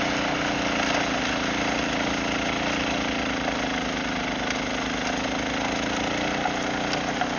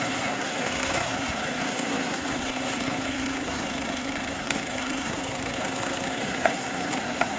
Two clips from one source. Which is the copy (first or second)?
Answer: second